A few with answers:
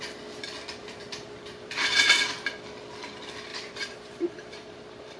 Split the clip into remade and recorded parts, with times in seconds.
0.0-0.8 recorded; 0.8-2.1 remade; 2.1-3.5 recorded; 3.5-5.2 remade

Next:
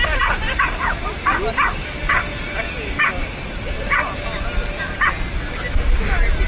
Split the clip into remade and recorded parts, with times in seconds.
0.0-6.5 recorded

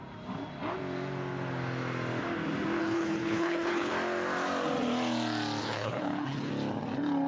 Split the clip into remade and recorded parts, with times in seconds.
0.0-2.8 recorded; 2.8-3.9 remade; 3.9-5.6 recorded; 5.6-6.5 remade; 6.5-7.3 recorded